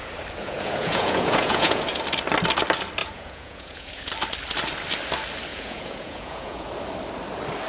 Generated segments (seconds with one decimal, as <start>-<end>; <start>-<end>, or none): 0.4-1.8; 3.0-4.1; 5.5-6.7